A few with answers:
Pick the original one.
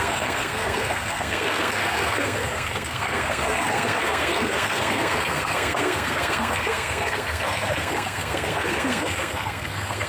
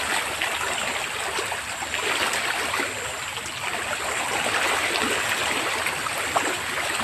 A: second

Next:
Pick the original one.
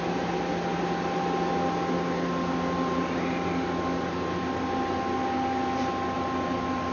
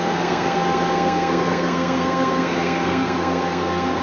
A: first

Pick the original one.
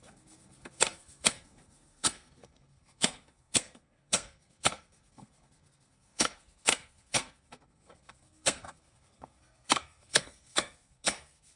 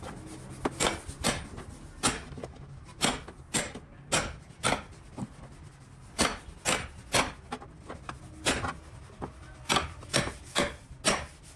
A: second